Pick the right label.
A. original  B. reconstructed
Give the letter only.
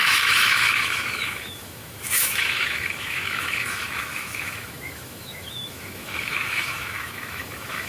B